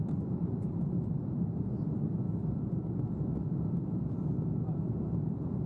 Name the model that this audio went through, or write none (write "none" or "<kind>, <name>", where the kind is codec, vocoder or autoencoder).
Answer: vocoder, BigVGAN v2